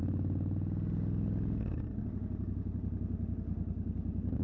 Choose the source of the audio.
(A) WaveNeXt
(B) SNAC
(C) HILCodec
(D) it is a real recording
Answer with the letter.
D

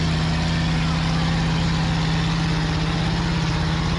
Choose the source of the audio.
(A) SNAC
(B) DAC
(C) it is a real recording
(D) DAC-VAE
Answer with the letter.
C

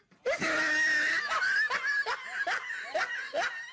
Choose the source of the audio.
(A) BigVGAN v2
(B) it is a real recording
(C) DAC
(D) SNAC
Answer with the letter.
B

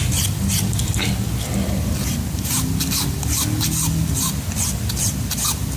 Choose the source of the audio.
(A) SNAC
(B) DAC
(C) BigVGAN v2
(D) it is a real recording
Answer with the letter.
D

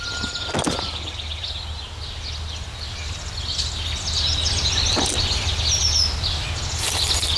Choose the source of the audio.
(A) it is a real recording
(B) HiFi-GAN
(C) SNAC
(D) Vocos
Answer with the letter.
A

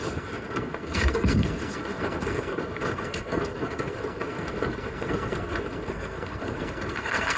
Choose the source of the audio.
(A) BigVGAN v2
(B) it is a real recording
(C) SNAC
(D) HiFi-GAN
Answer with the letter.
C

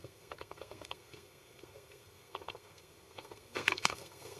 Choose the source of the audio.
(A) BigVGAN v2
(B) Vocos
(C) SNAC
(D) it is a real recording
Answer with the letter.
C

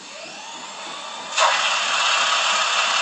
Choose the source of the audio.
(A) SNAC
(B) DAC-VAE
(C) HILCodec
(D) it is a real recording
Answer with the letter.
D